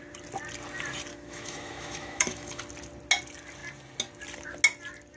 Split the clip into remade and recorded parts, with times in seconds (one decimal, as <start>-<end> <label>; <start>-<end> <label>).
0.0-1.1 recorded; 1.1-2.6 remade; 2.6-5.2 recorded